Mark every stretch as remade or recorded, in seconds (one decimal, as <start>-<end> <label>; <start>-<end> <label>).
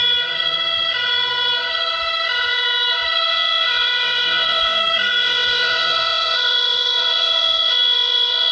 0.0-3.3 recorded; 3.3-4.8 remade; 4.8-5.2 recorded; 5.2-8.5 remade